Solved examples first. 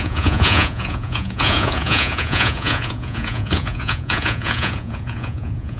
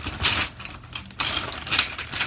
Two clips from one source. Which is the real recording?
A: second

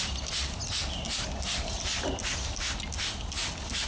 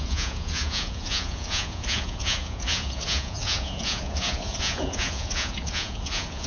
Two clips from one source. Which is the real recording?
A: first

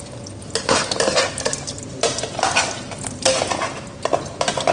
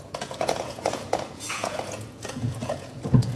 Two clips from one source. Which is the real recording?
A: first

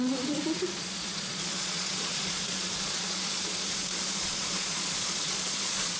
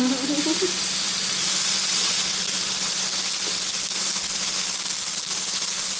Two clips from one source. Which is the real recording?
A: second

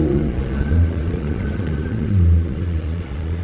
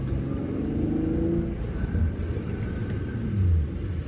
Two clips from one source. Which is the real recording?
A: second